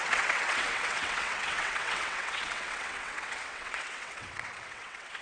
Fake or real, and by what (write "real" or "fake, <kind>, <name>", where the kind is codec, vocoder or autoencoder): fake, vocoder, WaveNeXt